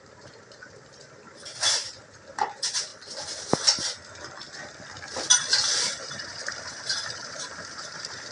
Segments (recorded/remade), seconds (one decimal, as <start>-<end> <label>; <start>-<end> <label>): 0.0-1.5 remade; 1.5-2.1 recorded; 2.1-2.9 remade; 2.9-5.8 recorded; 5.8-8.3 remade